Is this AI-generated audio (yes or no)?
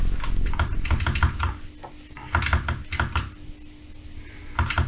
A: no